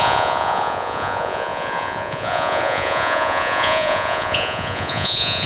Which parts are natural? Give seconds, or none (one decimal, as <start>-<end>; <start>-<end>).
none